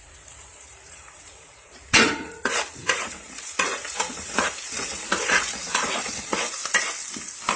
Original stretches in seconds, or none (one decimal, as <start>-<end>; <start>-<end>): 6.6-7.6